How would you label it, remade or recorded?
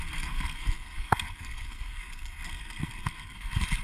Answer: remade